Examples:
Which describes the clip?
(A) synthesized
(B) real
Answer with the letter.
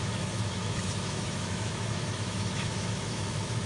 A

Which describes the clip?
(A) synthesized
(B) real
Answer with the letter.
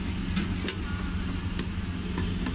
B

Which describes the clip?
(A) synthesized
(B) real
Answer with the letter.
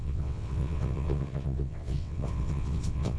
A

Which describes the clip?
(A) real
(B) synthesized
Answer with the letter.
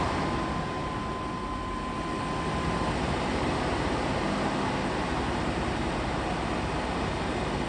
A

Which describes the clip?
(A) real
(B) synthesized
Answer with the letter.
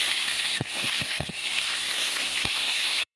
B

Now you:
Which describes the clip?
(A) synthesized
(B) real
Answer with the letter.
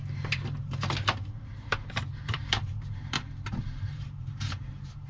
A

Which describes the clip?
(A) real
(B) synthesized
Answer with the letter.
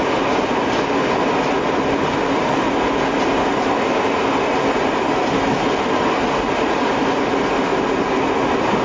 A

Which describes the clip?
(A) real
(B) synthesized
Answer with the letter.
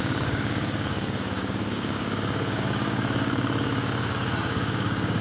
B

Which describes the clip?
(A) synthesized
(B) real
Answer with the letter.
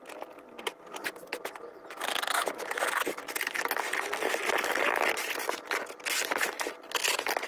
B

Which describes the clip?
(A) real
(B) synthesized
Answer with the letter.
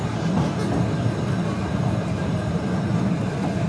A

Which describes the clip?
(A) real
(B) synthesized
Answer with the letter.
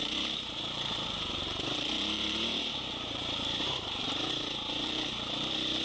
B